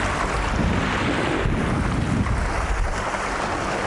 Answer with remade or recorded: recorded